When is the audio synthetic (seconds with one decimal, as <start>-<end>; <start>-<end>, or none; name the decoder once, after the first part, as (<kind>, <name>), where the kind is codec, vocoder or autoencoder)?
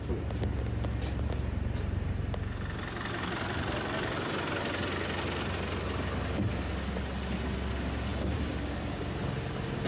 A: none